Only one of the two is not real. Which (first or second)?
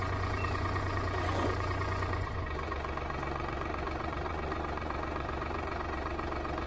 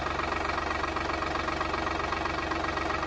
first